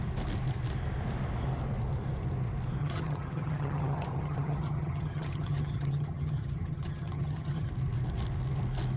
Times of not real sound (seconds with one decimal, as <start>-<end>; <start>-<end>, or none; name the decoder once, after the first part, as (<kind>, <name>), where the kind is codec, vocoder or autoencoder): 2.8-7.7 (vocoder, HiFi-GAN)